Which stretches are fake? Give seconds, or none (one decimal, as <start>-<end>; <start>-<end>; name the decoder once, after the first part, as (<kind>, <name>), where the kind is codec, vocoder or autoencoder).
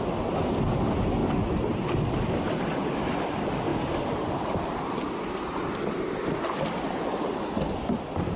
none